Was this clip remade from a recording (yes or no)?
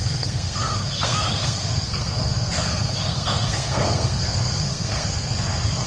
yes